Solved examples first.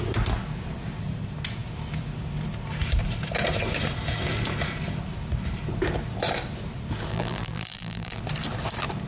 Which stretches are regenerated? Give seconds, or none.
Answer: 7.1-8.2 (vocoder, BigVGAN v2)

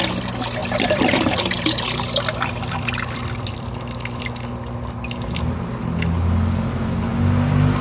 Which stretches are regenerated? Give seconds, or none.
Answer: 0.6-4.3 (vocoder, BigVGAN v2)